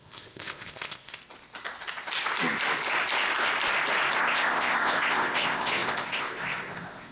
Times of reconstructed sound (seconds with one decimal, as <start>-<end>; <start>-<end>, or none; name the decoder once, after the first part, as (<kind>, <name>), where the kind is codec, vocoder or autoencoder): 0.0-1.2 (codec, ZipCodec); 4.2-7.1